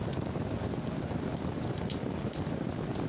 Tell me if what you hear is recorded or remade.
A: recorded